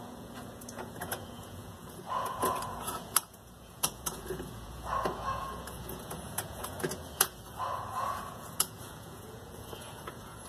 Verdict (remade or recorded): remade